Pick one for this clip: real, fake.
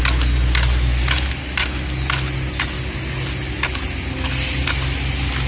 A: real